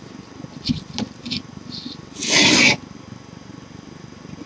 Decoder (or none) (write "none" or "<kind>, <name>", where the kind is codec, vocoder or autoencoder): none